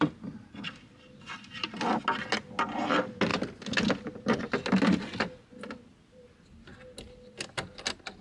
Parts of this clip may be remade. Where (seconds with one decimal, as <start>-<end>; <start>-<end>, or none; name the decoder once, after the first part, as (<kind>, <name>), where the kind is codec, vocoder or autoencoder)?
none